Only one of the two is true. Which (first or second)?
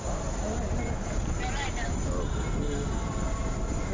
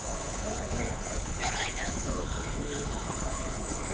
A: first